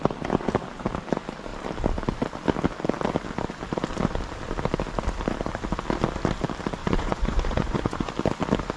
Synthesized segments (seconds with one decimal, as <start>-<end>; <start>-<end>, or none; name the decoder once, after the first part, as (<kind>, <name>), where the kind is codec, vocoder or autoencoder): 6.8-8.1 (vocoder, Vocos)